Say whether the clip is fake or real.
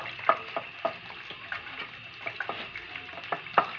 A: real